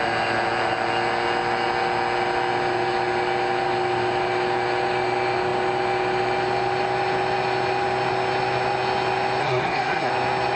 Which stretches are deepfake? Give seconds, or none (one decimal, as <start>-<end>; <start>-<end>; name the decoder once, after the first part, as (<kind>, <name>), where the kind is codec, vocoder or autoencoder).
9.4-10.1 (codec, SNAC)